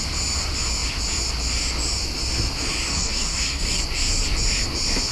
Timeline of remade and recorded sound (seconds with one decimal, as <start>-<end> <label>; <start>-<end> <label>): 0.0-2.9 recorded; 2.9-3.8 remade; 3.8-5.1 recorded